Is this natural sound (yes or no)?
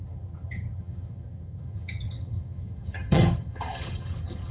no